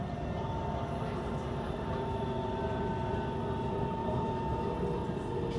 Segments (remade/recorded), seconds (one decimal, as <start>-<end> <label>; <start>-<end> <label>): 0.0-4.0 recorded; 4.0-4.8 remade; 4.8-5.6 recorded